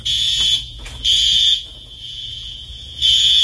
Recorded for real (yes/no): no